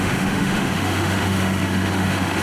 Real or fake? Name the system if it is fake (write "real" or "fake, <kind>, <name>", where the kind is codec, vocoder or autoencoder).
fake, autoencoder, DAC-VAE